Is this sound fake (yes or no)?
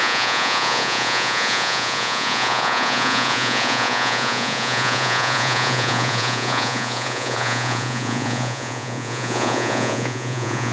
yes